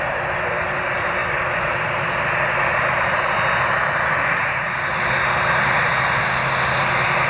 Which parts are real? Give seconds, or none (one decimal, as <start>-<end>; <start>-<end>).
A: 0.0-7.3